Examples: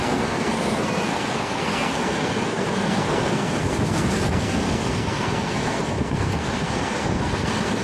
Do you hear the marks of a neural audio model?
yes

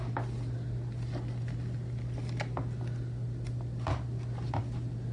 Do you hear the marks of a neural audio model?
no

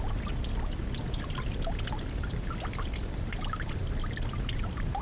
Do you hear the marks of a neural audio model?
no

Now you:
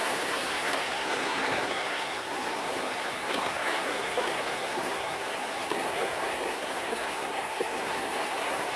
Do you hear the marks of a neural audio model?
yes